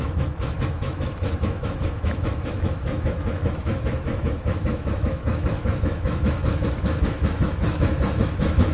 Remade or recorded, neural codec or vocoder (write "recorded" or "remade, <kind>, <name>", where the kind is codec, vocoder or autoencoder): remade, autoencoder, DAC-VAE